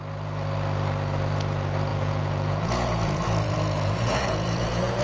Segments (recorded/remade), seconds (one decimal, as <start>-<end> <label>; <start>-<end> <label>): 0.0-1.9 recorded; 1.9-5.0 remade